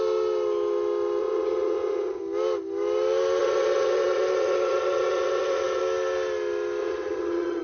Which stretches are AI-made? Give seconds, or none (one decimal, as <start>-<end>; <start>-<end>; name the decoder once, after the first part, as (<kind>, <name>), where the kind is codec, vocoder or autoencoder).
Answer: 1.2-2.2 (vocoder, WaveNeXt); 3.4-5.8; 6.8-7.6